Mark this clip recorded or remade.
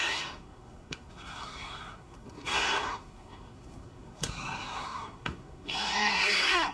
remade